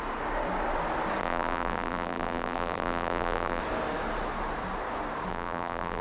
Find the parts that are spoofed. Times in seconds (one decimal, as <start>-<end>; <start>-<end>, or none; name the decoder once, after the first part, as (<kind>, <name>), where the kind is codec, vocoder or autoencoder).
1.2-3.6 (vocoder, BigVGAN v2); 5.3-6.0